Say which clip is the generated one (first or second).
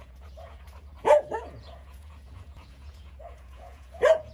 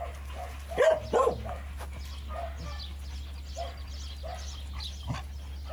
first